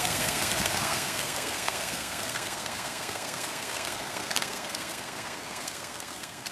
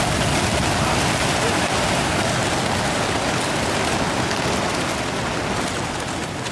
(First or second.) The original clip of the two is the second